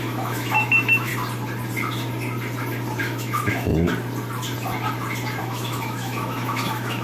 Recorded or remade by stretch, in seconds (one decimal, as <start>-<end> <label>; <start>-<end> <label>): 0.0-1.1 remade; 1.1-3.0 recorded; 3.0-3.7 remade; 3.7-5.4 recorded; 5.4-7.0 remade

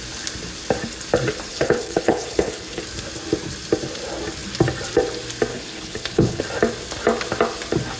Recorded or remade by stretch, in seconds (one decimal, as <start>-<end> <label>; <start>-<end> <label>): 0.0-1.5 recorded; 1.5-2.8 remade; 2.8-5.5 recorded; 5.5-6.4 remade; 6.4-8.0 recorded

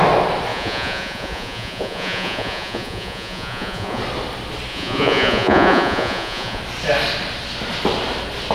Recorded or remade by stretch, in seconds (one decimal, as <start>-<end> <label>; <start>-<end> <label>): 0.0-0.5 recorded; 0.5-4.0 remade; 4.0-4.7 recorded; 4.7-6.6 remade; 6.6-8.5 recorded

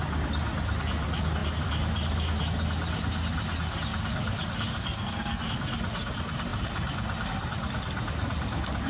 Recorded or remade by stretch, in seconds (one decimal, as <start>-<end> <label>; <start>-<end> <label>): 0.0-4.7 recorded; 4.7-5.4 remade; 5.4-8.9 recorded